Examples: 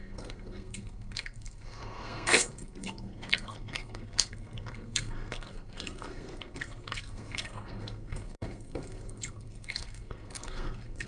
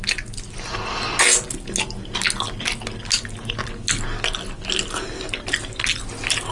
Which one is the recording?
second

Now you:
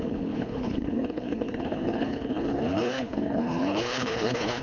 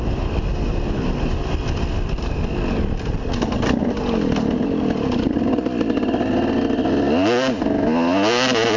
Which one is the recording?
second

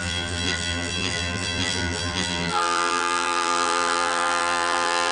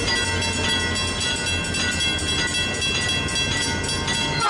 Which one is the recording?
second